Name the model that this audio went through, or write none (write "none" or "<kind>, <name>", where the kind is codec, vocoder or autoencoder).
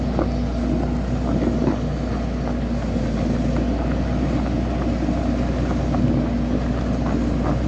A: none